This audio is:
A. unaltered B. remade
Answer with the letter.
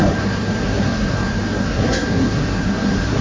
B